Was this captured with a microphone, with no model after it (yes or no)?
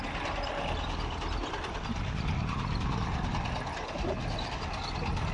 yes